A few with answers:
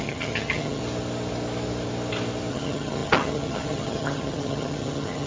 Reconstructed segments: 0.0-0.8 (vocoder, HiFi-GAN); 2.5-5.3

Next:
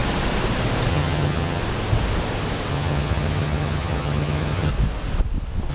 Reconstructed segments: 0.9-1.6 (vocoder, HiFi-GAN); 2.7-4.7